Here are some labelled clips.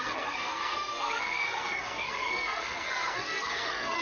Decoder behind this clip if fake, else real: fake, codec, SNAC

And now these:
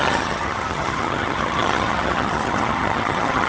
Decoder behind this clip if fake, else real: fake, vocoder, HiFi-GAN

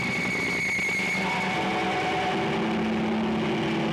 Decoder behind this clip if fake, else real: real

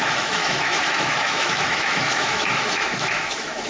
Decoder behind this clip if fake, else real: fake, autoencoder, DAC-VAE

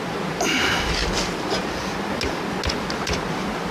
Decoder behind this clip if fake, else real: real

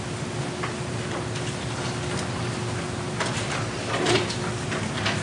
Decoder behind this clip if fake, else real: real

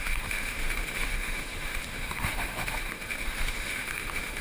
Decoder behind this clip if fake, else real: fake, autoencoder, DAC-VAE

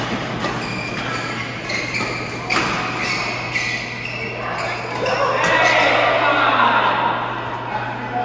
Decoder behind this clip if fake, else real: real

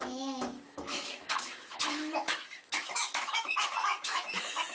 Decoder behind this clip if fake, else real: fake, autoencoder, DAC-VAE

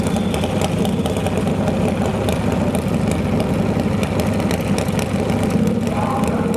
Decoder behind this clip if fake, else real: real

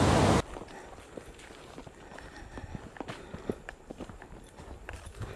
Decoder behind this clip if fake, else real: real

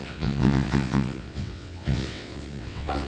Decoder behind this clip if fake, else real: fake, vocoder, WaveNeXt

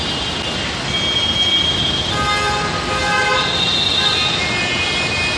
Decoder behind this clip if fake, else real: real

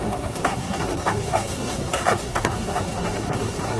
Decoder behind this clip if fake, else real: fake, codec, SNAC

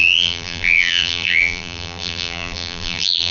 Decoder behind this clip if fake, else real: fake, vocoder, BigVGAN v2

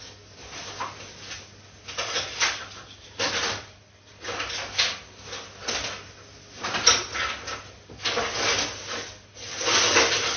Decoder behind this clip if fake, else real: real